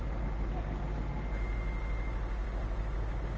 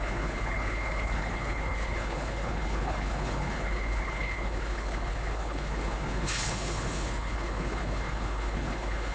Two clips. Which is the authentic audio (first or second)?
first